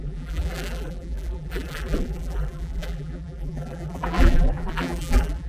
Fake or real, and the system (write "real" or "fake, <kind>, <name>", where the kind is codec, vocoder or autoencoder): fake, vocoder, BigVGAN v2